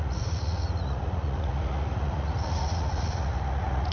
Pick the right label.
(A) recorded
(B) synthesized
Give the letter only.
B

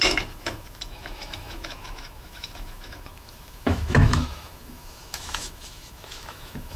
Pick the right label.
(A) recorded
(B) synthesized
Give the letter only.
B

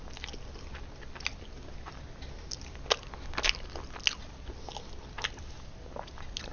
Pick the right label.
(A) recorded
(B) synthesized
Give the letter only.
A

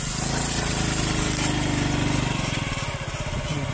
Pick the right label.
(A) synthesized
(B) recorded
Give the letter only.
B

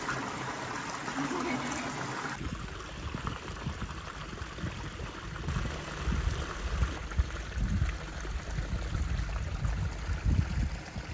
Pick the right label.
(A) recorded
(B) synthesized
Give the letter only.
A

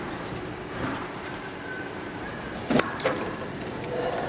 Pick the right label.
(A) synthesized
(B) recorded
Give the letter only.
A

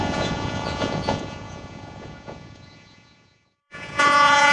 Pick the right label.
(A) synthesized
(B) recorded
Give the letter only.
A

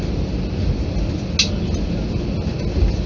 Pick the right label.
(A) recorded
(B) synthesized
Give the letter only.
A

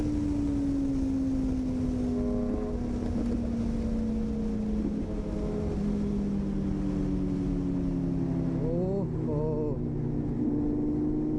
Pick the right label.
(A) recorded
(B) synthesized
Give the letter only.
A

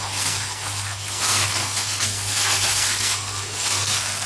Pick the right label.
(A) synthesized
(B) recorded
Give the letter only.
A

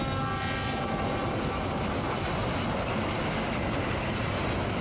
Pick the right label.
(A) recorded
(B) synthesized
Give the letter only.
A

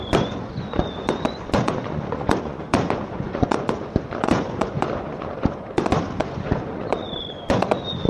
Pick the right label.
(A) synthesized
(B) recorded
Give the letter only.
A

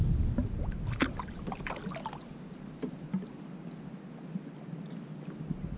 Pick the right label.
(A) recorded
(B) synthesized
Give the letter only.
A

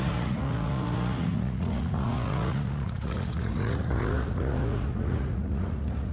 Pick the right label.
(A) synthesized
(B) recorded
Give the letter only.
A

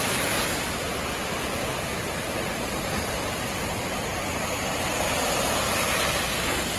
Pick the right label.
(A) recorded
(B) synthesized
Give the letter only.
A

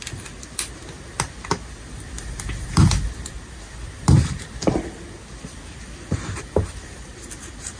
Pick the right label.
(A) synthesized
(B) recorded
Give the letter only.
B